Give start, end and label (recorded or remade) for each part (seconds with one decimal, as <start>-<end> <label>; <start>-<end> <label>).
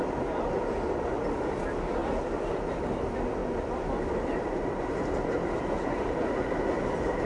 0.0-7.2 recorded